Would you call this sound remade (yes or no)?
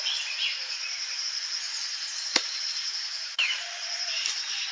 yes